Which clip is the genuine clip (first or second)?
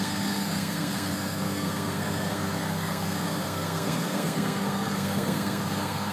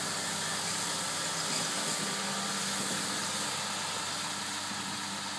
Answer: second